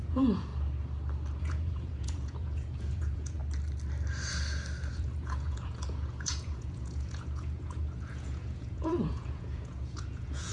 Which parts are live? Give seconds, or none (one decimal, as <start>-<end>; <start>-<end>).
0.5-1.4; 3.4-4.9